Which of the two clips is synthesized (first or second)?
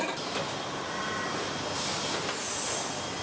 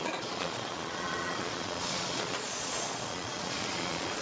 second